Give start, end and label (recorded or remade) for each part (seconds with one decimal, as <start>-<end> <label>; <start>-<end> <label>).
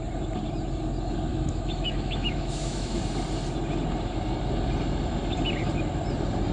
0.0-1.3 recorded; 1.3-3.0 remade; 3.0-6.5 recorded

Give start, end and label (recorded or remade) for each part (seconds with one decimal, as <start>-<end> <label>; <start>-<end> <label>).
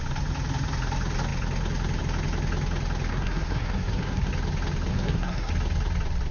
0.0-3.1 recorded; 3.1-4.3 remade; 4.3-4.9 recorded; 4.9-5.5 remade; 5.5-6.3 recorded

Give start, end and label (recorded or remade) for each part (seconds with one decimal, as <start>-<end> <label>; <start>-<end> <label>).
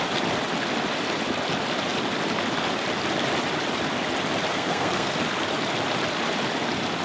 0.0-4.5 recorded; 4.5-5.1 remade; 5.1-7.0 recorded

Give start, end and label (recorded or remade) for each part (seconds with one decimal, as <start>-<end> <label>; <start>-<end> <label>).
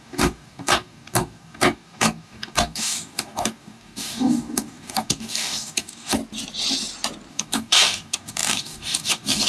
0.0-6.2 remade; 6.2-7.3 recorded; 7.3-9.5 remade